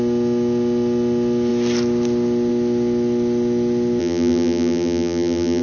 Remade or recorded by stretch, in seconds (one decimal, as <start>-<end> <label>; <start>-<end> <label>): 0.0-4.0 recorded; 4.0-5.6 remade